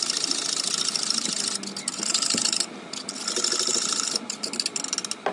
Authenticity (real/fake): real